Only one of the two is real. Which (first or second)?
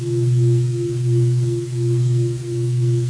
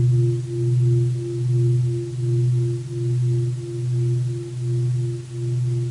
second